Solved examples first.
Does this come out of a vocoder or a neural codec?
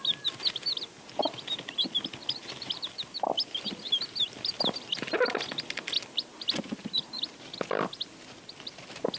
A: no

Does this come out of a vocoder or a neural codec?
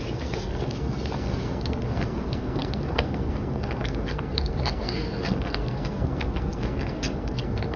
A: yes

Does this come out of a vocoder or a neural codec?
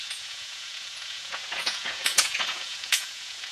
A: yes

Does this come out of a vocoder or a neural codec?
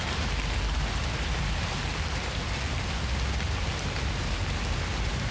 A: no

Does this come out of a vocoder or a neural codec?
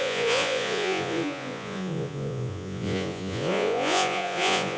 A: yes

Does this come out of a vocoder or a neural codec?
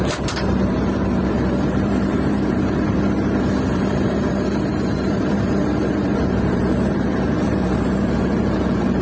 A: yes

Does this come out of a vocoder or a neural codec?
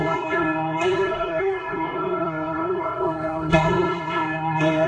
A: yes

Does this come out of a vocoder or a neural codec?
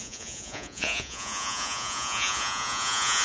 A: yes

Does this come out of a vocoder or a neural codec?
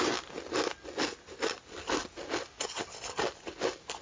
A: no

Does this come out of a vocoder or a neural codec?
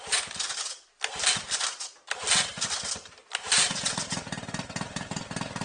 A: no